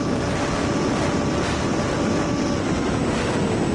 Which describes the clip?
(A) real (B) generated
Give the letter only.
A